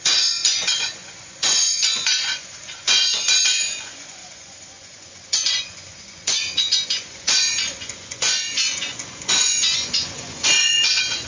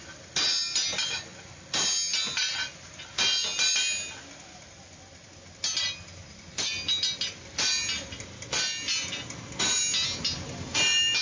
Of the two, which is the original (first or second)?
second